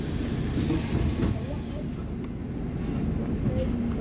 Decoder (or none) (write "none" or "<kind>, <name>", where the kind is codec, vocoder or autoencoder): none